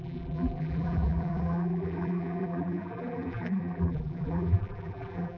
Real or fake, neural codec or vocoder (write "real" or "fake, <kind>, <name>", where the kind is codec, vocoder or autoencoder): fake, vocoder, BigVGAN v2